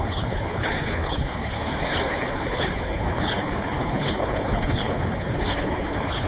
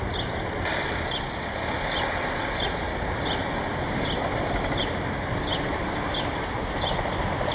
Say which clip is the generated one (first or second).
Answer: first